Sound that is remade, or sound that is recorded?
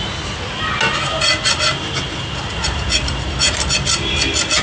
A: recorded